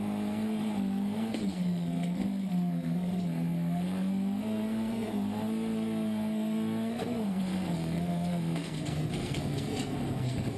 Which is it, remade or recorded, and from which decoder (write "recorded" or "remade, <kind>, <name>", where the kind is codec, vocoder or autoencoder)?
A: remade, codec, SNAC